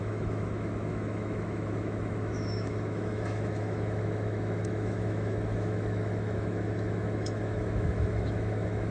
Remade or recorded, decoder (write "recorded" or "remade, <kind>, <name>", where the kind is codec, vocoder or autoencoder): remade, autoencoder, DAC-VAE